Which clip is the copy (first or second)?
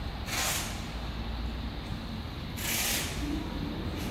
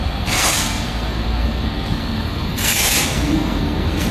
second